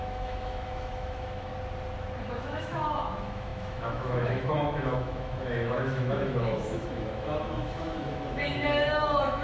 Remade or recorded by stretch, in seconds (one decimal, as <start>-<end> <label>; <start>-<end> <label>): 0.0-1.5 remade; 1.5-2.2 recorded; 2.2-9.4 remade